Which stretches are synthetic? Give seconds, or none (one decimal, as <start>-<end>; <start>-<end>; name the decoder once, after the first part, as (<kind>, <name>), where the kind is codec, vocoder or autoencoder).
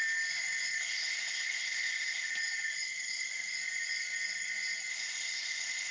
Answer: 0.8-2.3 (codec, ZipCodec); 4.9-5.9